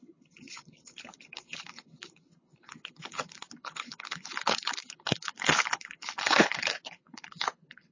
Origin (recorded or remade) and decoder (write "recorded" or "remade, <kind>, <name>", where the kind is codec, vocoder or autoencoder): remade, codec, HILCodec